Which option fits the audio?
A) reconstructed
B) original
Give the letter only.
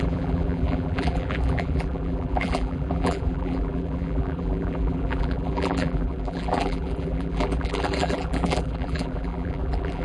A